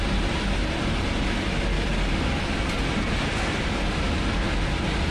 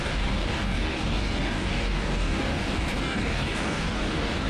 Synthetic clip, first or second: second